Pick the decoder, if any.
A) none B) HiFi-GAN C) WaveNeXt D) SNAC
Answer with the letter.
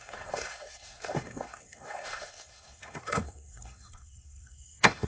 D